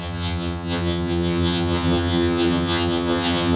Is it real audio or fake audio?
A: fake